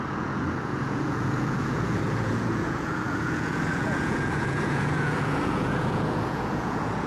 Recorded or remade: remade